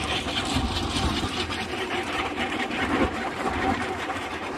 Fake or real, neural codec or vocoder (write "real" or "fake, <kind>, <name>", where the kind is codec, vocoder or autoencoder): fake, vocoder, BigVGAN v2